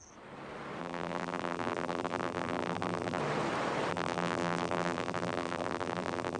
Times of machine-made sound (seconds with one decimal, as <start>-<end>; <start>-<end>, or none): 0.8-3.2; 3.9-6.4